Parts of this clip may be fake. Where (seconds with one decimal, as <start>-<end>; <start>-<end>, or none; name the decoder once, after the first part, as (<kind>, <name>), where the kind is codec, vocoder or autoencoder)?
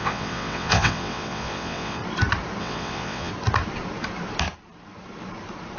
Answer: 0.0-2.0 (vocoder, WaveNeXt); 2.6-3.3